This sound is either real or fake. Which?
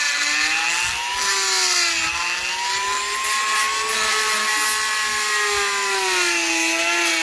real